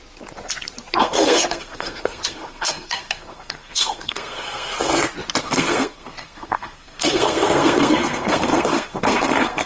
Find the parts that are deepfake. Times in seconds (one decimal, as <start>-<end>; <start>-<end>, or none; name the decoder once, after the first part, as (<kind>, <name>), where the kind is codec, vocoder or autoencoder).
1.0-4.7 (codec, SNAC); 5.4-9.7